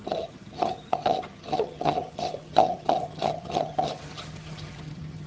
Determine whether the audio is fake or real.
fake